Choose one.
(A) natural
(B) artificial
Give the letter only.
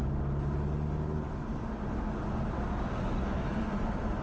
A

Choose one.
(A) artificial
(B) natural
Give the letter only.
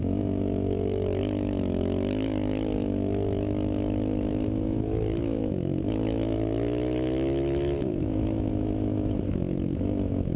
A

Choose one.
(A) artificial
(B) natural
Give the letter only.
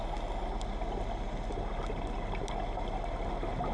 B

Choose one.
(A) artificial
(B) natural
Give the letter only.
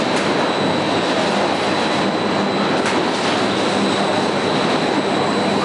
B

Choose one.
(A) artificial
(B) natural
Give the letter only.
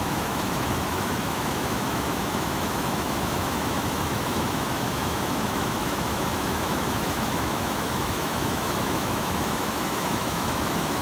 A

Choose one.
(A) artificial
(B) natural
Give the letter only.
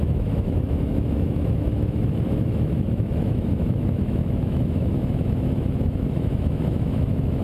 A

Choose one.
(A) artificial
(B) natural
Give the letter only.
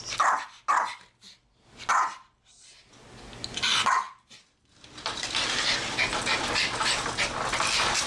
B